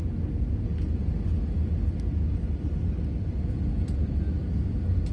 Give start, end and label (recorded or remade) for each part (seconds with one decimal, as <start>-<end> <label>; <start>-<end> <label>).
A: 0.0-5.1 recorded